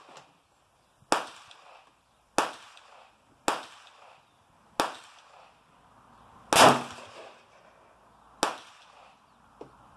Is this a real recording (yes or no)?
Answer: yes